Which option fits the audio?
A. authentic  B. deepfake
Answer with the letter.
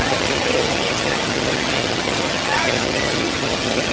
B